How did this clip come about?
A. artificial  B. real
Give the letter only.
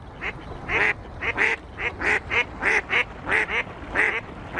B